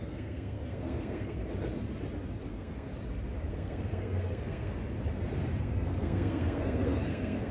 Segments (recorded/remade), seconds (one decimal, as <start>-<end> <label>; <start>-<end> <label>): 0.0-1.4 remade; 1.4-2.5 recorded; 2.5-2.9 remade; 2.9-3.5 recorded; 3.5-4.8 remade; 4.8-5.6 recorded; 5.6-7.5 remade